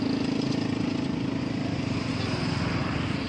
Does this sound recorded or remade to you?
recorded